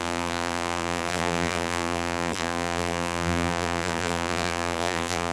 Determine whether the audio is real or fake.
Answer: fake